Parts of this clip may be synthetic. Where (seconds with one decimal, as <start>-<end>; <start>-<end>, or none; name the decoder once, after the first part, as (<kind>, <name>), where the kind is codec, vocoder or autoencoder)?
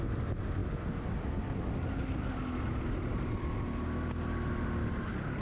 none